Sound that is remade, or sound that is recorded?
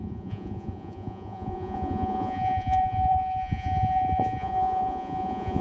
remade